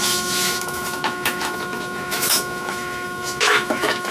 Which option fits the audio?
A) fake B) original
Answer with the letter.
A